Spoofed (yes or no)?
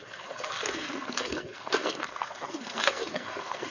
yes